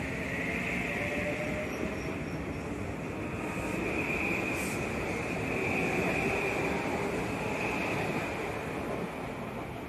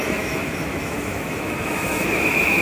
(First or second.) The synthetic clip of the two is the second